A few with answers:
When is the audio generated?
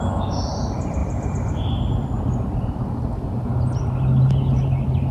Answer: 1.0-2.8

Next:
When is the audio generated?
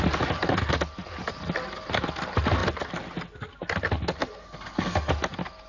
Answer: 4.4-5.1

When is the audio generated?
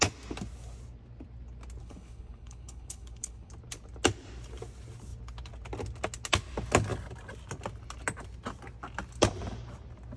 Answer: 1.8-3.5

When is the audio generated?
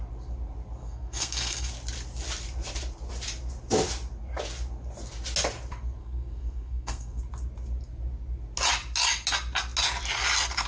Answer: 0.8-1.7; 6.0-7.2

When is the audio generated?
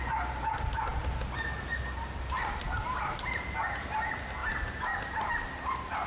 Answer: 4.4-5.3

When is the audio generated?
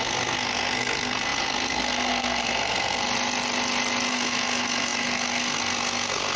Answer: 0.0-3.0; 4.1-6.4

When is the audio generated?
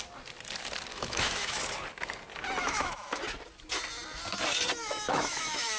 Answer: 0.9-1.6; 2.6-3.2; 4.8-5.8